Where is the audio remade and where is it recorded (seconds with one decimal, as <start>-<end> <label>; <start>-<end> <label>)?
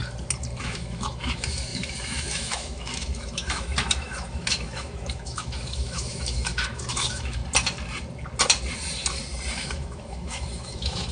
0.0-0.6 recorded; 0.6-7.4 remade; 7.4-9.5 recorded; 9.5-11.1 remade